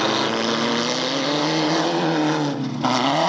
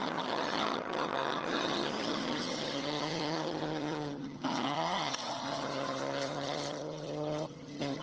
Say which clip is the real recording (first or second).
first